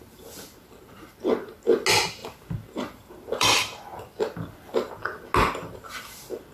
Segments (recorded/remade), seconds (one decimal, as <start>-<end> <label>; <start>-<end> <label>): 0.0-2.2 recorded; 2.2-4.9 remade; 4.9-6.5 recorded